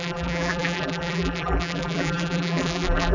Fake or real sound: fake